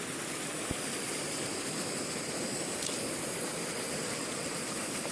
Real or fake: fake